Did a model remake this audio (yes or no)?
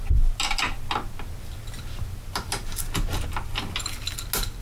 no